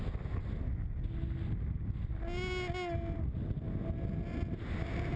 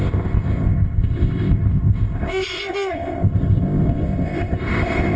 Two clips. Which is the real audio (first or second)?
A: first